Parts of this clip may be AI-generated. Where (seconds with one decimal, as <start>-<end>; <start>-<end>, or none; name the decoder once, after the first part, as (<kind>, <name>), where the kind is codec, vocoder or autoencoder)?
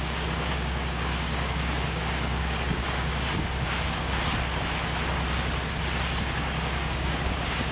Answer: 0.0-4.3 (codec, DAC); 6.2-7.7